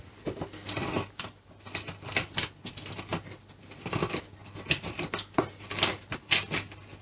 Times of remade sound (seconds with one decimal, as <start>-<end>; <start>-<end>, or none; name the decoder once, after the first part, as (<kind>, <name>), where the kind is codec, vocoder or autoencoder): none